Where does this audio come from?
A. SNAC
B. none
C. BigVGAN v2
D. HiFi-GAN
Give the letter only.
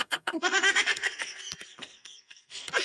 A